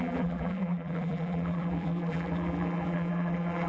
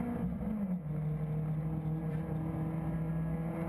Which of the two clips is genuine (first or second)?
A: second